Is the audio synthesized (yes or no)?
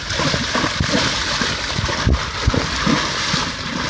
no